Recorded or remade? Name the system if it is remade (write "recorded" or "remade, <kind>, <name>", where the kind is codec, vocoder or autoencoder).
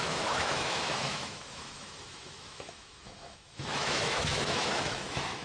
remade, autoencoder, DAC-VAE